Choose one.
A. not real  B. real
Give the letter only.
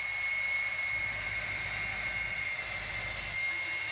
B